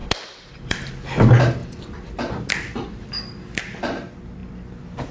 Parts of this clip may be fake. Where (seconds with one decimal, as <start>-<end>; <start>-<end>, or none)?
0.0-0.9